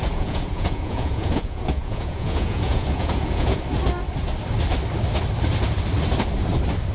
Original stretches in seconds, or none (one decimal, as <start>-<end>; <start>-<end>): 3.6-6.9